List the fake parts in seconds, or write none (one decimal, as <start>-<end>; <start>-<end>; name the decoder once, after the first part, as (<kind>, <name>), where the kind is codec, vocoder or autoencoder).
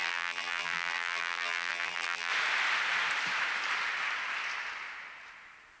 0.0-2.3 (vocoder, BigVGAN v2)